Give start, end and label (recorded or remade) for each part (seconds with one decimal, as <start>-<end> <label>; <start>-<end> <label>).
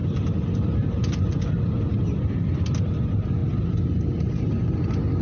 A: 0.0-5.2 recorded